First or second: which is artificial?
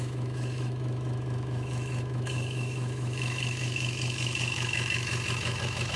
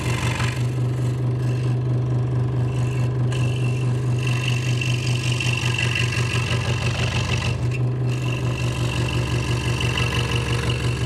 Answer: first